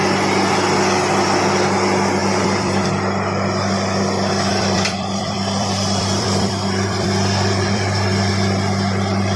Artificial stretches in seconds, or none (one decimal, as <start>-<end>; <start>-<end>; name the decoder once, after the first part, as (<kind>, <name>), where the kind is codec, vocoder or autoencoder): 2.2-2.9 (vocoder, BigVGAN v2); 4.5-8.3